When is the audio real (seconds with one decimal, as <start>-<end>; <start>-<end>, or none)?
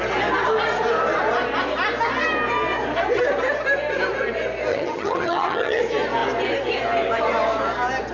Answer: 0.0-4.7; 5.8-8.1